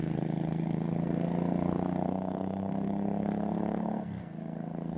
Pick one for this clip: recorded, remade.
remade